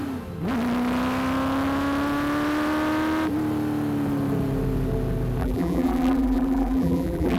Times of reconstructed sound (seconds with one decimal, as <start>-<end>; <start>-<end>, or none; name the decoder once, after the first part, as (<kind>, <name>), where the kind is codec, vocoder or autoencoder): 5.4-7.4 (vocoder, BigVGAN v2)